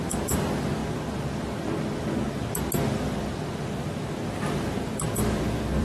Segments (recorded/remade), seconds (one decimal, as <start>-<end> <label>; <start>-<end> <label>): 0.0-0.8 remade; 0.8-4.3 recorded; 4.3-5.8 remade